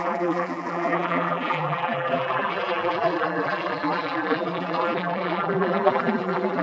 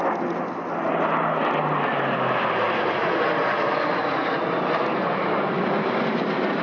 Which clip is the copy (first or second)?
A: first